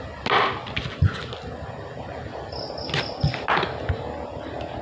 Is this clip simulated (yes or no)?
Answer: no